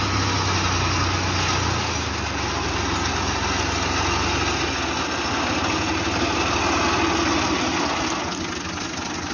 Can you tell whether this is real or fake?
real